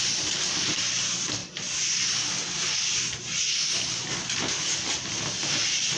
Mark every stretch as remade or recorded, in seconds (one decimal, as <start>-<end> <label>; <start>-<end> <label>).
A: 0.0-6.0 recorded